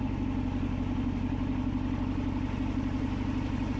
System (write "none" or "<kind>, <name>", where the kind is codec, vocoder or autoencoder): none